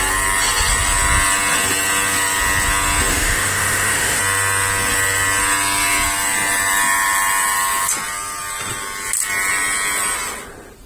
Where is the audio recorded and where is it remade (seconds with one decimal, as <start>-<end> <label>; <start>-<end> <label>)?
0.0-3.1 recorded; 3.1-4.2 remade; 4.2-10.9 recorded